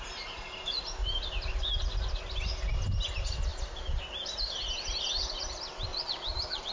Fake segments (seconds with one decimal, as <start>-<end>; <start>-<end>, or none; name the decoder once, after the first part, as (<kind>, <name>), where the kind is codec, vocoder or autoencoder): 5.9-6.7 (vocoder, Vocos)